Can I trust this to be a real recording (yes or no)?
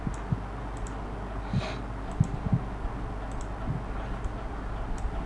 yes